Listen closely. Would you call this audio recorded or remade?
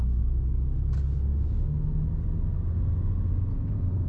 recorded